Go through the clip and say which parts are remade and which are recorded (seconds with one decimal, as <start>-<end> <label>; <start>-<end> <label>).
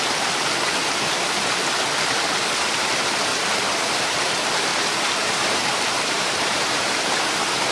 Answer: 0.0-3.3 recorded; 3.3-4.3 remade; 4.3-4.7 recorded; 4.7-7.2 remade; 7.2-7.7 recorded